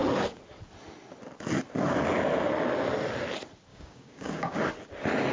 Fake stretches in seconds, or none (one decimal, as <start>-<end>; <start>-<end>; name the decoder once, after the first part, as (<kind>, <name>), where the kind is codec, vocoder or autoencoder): 3.7-4.6 (codec, DAC)